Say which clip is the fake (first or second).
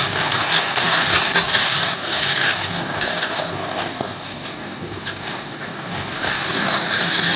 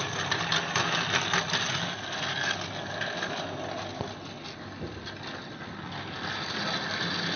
first